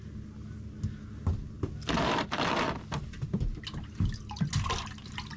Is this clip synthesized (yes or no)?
no